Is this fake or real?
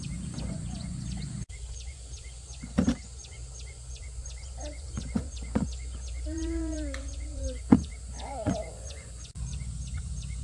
fake